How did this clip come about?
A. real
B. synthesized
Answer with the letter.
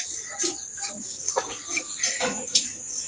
B